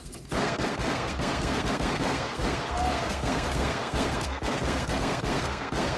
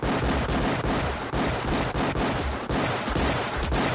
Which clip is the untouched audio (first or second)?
second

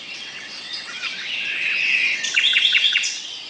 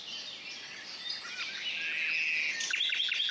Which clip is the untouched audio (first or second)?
second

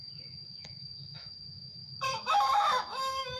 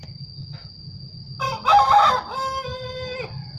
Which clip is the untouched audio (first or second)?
second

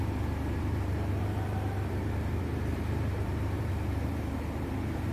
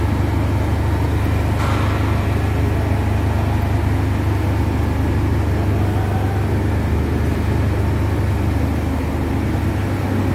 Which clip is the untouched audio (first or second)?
second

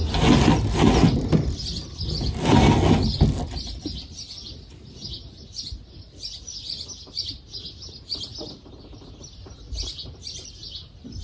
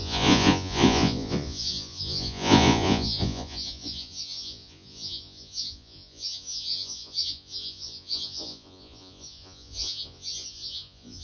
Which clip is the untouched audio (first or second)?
first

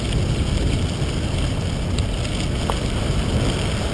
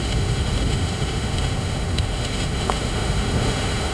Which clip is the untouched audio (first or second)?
first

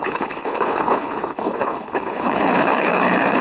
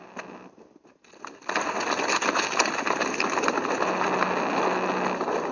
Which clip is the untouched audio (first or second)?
second